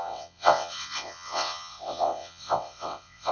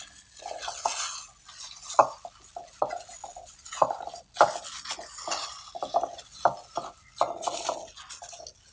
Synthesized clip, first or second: first